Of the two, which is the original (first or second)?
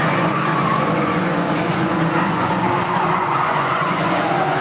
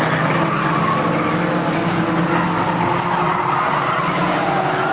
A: second